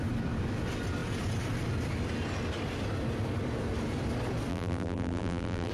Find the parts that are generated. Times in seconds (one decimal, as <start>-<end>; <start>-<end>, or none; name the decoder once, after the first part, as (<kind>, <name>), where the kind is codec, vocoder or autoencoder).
4.5-5.7 (vocoder, BigVGAN v2)